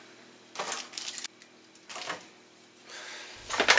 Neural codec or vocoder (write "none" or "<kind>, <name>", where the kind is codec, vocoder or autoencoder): none